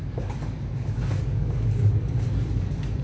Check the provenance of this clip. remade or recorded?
remade